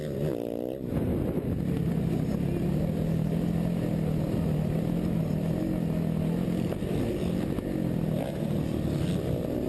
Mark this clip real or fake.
real